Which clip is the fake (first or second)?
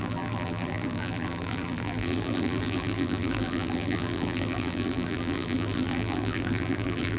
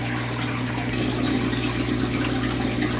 first